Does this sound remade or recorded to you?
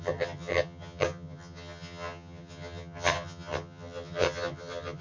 remade